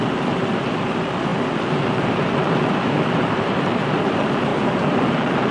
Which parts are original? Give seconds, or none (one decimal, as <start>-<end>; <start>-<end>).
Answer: none

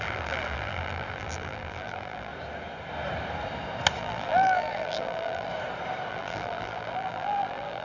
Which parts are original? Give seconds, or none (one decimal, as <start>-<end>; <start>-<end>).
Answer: 2.3-4.0; 5.5-6.1

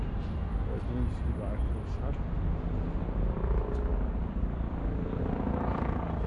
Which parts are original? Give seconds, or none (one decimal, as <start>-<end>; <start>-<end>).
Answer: 0.0-6.3

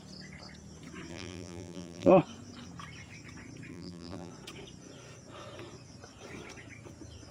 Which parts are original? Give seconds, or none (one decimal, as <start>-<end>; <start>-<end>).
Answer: 0.0-1.1; 2.1-3.7; 4.3-7.3

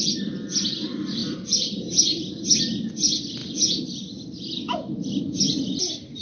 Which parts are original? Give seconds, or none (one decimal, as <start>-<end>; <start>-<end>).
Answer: none